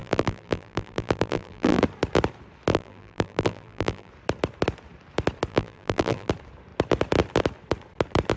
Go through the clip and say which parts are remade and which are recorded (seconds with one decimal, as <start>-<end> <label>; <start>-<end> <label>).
0.0-1.8 remade; 1.8-2.7 recorded; 2.7-4.1 remade; 4.1-5.5 recorded; 5.5-6.3 remade; 6.3-8.4 recorded